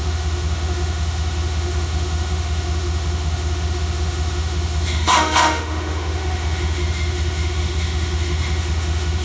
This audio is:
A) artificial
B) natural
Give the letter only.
A